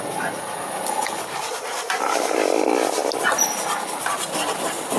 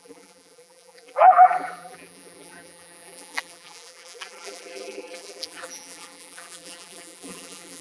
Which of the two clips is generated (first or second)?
second